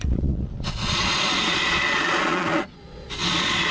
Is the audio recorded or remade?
remade